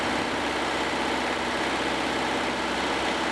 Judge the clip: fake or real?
real